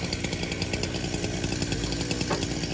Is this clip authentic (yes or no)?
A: yes